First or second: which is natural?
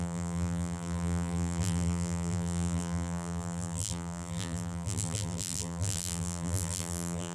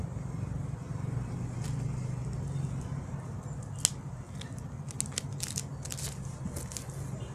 second